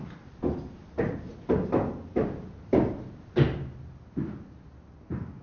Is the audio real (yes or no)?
yes